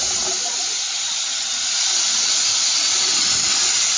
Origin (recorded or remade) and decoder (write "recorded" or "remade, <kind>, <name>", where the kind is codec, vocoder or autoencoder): remade, vocoder, BigVGAN v2